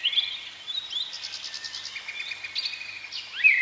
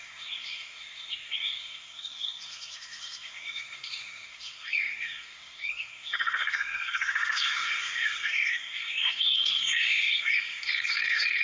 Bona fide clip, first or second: first